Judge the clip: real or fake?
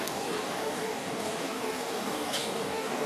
fake